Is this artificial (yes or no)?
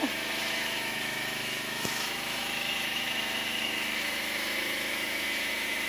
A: yes